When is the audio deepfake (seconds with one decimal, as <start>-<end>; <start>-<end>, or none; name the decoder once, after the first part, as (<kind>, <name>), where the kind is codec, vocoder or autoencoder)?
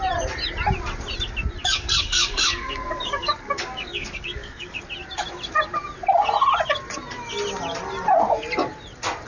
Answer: 1.6-4.8 (codec, DAC)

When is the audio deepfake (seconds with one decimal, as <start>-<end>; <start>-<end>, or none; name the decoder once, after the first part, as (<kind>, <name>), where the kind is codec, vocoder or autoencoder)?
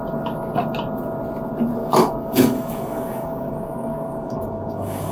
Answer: 1.8-5.1 (codec, DAC)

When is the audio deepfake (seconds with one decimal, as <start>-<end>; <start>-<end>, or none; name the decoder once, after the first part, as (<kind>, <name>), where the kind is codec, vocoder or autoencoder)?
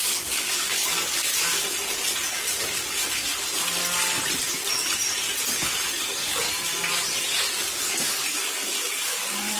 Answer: 0.0-1.3 (codec, DAC); 6.0-6.5; 7.6-9.6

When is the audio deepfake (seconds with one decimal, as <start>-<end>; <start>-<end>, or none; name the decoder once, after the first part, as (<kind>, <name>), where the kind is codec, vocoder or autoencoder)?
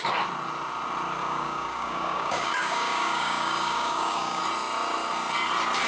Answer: 1.2-4.4 (codec, DAC)